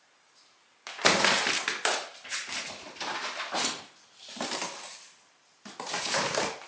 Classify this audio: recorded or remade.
recorded